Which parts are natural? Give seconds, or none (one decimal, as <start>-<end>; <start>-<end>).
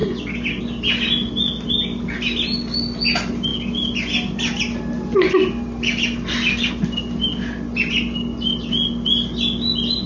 0.0-10.1